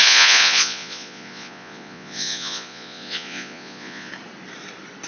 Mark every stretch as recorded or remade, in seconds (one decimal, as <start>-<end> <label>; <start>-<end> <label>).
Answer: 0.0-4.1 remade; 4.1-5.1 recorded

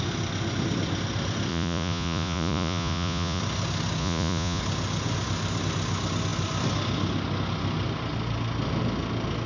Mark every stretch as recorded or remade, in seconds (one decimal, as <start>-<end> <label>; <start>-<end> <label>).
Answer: 0.0-1.5 recorded; 1.5-3.4 remade; 3.4-4.0 recorded; 4.0-4.6 remade; 4.6-9.5 recorded

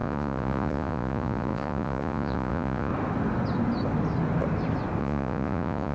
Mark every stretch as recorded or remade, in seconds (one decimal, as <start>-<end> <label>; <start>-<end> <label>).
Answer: 0.0-2.9 remade; 2.9-5.0 recorded; 5.0-5.9 remade

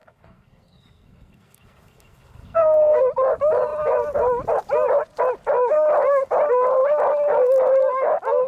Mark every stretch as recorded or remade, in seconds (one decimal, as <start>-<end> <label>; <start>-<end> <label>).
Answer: 0.0-3.0 remade; 3.0-8.5 recorded